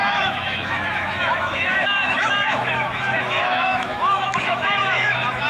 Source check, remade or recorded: remade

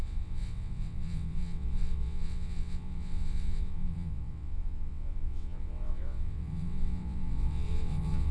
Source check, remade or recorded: remade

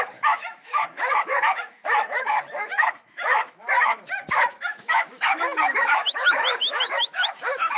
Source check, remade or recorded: remade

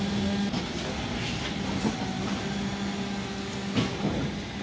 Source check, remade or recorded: recorded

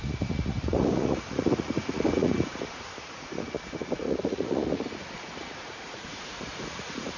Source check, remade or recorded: remade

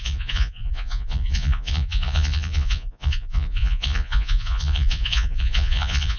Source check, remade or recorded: remade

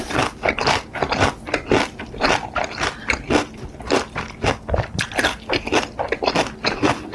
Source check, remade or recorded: recorded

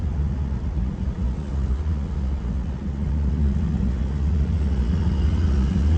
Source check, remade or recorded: remade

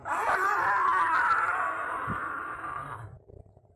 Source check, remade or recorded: recorded